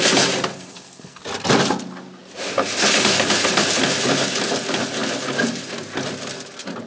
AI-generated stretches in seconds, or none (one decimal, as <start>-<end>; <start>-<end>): 0.5-1.2